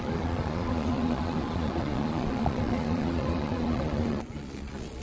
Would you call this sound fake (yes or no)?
yes